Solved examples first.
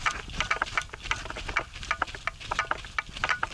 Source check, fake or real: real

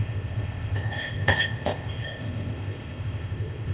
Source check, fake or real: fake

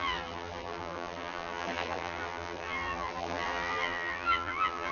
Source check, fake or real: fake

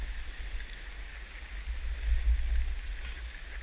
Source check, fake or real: real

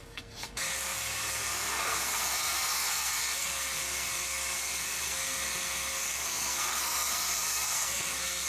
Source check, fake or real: fake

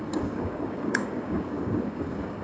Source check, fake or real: fake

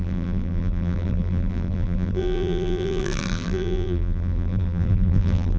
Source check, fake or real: fake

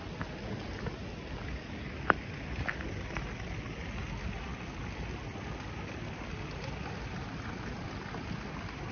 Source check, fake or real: real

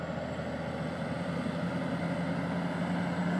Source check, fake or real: real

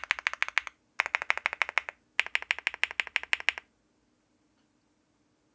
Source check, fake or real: real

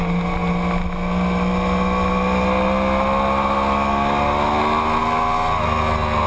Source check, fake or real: real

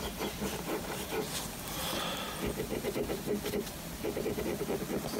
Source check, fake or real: real